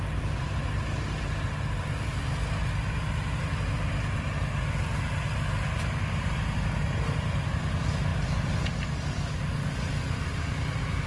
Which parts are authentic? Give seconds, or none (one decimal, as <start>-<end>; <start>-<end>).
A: 0.0-11.1